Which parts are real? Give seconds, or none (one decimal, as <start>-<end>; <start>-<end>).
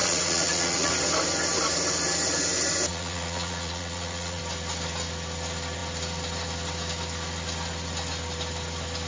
0.9-2.9; 4.4-9.1